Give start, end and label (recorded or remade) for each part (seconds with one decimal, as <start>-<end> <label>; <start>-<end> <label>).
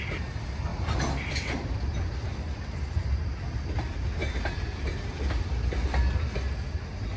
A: 0.0-7.2 recorded